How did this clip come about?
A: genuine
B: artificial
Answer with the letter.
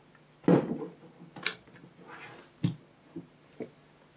A